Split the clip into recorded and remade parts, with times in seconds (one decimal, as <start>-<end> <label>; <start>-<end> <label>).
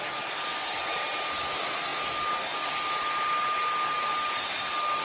0.0-5.0 recorded